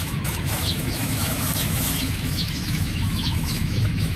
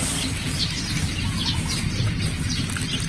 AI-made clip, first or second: first